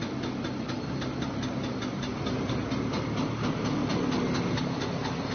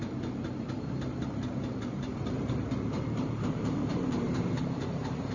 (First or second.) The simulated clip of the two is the second